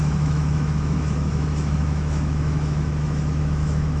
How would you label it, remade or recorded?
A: remade